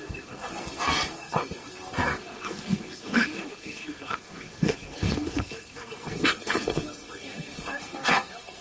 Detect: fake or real fake